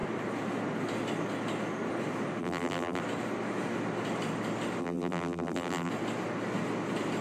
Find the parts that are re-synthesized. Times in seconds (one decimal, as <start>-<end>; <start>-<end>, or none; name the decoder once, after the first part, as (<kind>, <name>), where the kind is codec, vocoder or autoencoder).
2.4-3.0 (vocoder, BigVGAN v2); 4.8-5.9